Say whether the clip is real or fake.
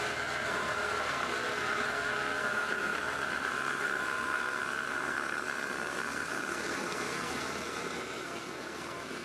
fake